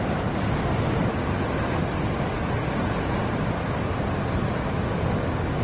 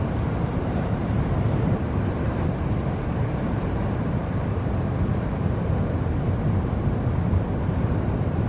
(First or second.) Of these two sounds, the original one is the first